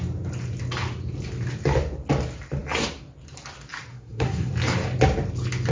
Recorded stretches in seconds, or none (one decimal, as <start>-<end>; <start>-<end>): 0.0-3.9; 4.5-5.7